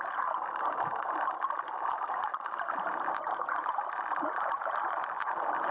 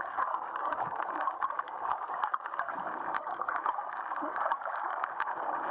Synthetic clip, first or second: second